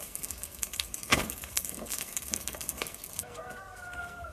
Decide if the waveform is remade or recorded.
remade